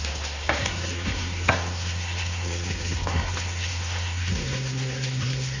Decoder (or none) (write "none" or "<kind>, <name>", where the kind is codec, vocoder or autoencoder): codec, SNAC